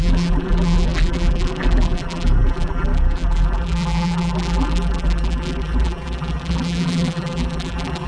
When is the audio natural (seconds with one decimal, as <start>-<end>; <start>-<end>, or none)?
none

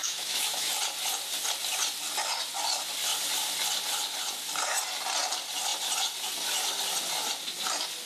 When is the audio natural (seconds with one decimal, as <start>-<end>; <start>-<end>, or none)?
0.7-8.1

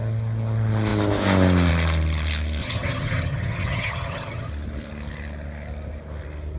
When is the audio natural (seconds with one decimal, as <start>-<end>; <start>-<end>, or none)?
0.0-2.6; 4.5-6.6